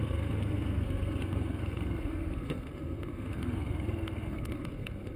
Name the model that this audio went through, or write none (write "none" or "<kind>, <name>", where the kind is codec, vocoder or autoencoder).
codec, SNAC